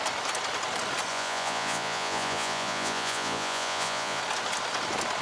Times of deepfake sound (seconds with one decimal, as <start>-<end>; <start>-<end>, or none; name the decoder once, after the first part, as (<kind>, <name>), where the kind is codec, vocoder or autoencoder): 1.1-4.2 (vocoder, Vocos)